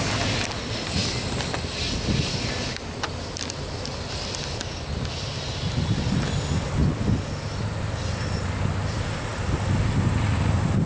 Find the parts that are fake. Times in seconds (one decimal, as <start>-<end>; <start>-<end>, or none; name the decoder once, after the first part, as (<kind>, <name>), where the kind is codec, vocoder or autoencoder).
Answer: none